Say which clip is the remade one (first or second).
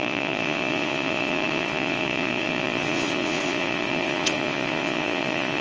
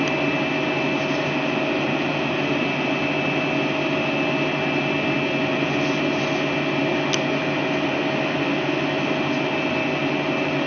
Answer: first